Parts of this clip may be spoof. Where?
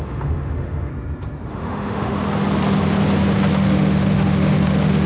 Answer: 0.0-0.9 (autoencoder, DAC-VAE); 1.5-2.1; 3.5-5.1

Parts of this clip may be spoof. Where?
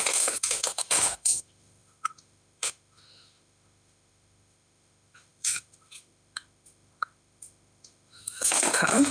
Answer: 0.0-9.1 (autoencoder, DAC-VAE)